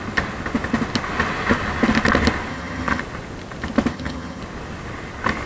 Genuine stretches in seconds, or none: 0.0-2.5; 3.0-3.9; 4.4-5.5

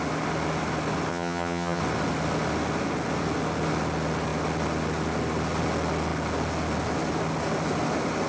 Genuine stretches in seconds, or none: 0.0-1.1; 1.8-8.3

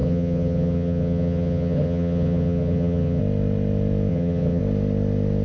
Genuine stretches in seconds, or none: 3.2-4.1; 4.6-5.4

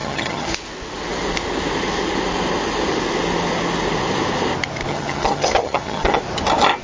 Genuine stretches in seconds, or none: 0.5-4.9; 6.2-6.8

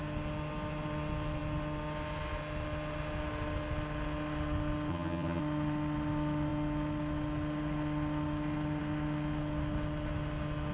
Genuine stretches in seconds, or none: 0.0-4.9; 5.4-10.7